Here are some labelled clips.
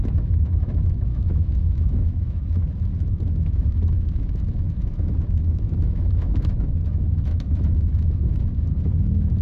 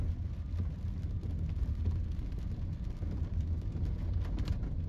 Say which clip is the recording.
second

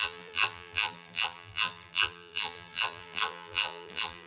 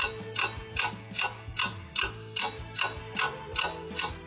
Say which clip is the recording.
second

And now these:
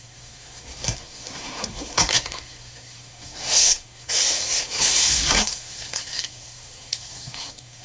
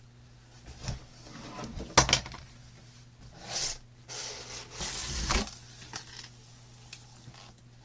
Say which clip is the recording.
second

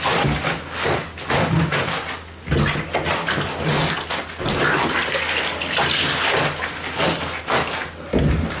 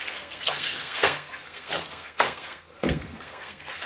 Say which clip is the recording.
first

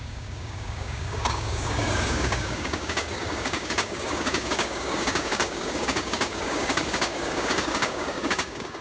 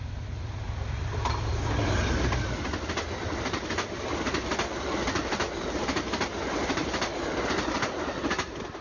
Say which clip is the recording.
second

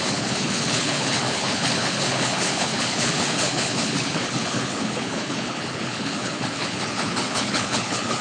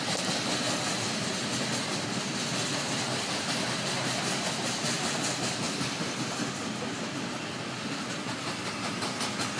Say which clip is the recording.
second